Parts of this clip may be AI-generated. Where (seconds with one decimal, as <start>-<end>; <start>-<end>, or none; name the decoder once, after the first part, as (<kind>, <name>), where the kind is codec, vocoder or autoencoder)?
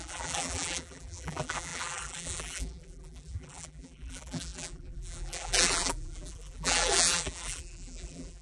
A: 0.0-8.4 (vocoder, BigVGAN v2)